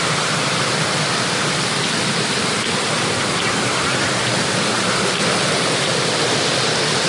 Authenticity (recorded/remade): recorded